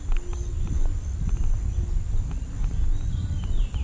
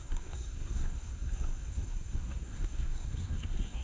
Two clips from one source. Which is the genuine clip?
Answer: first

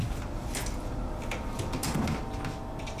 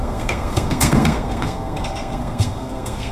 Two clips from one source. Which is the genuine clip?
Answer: first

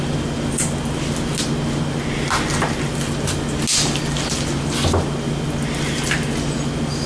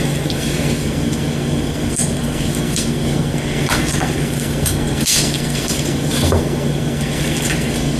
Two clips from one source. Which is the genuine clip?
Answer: first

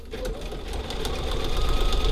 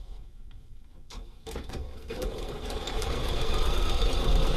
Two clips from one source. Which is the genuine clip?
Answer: first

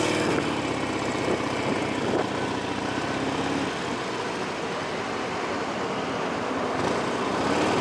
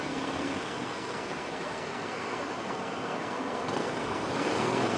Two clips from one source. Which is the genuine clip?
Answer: first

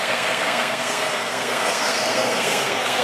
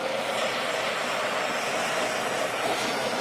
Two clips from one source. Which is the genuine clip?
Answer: second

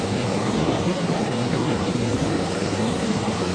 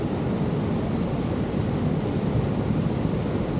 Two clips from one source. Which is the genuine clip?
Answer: second